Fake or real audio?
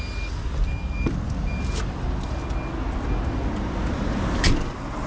real